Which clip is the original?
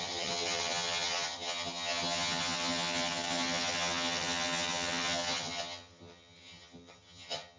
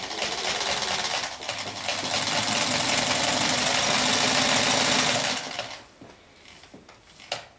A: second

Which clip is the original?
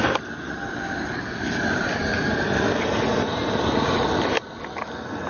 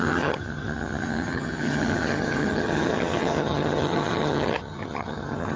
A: first